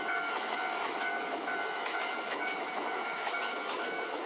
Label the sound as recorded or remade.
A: remade